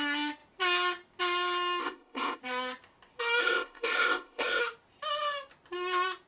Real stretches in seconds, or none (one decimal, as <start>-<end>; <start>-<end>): 0.0-1.8; 2.4-3.4; 4.6-6.3